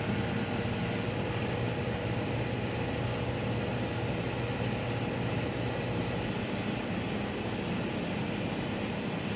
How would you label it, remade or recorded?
recorded